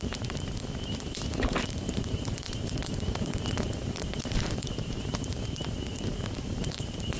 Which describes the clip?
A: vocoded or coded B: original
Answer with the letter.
A